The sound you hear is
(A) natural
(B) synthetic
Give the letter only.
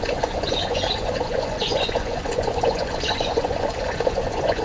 B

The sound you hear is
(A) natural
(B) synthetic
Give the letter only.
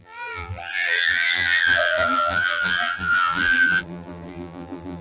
B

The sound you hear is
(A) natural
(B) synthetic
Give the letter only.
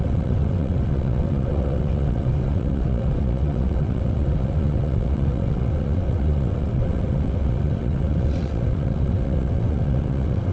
B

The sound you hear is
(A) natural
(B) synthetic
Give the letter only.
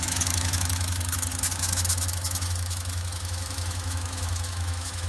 B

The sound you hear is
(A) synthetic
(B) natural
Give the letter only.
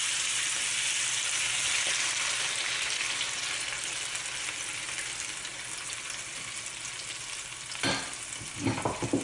B